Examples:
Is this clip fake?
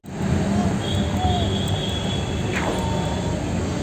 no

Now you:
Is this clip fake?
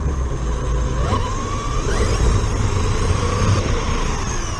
no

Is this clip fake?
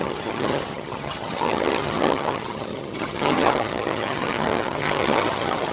yes